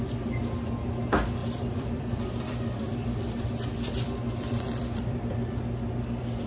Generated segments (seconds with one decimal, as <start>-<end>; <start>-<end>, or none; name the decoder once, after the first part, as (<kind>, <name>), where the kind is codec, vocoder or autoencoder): 1.4-5.3 (vocoder, BigVGAN v2)